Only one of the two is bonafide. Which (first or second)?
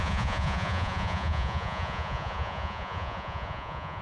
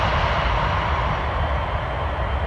second